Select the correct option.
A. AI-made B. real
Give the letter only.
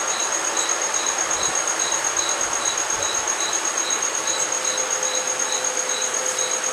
A